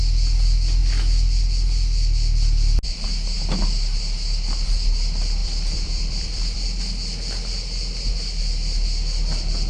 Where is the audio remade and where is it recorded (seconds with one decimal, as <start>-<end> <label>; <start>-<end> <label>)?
0.0-5.4 recorded; 5.4-6.8 remade; 6.8-9.7 recorded